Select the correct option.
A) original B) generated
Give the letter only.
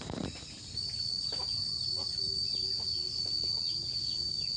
A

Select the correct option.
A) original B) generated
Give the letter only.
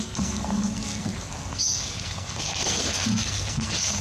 B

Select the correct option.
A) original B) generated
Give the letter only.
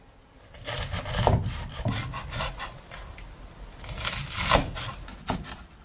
A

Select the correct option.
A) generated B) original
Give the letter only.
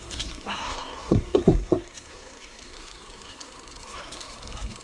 A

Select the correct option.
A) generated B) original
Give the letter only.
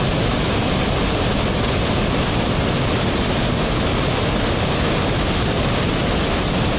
B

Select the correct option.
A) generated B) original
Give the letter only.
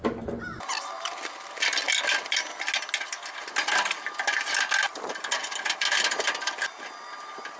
B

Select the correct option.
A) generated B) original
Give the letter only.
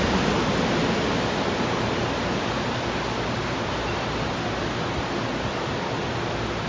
B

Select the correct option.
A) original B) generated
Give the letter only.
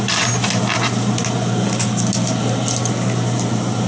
A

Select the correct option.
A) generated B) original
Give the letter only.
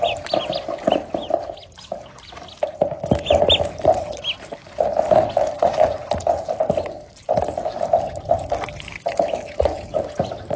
B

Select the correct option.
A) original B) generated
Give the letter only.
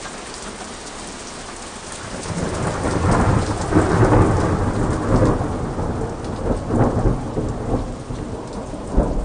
A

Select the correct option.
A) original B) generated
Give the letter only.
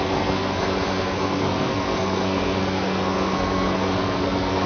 B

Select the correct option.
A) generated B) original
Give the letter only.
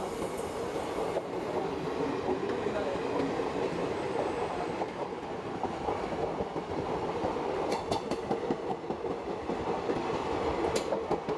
B